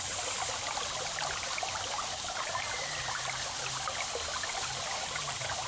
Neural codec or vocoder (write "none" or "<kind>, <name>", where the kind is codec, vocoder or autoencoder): none